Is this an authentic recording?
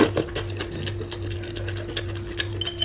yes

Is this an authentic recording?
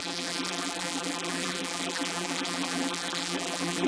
no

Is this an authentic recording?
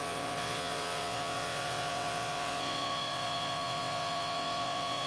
no